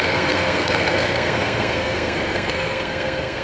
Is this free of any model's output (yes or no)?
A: no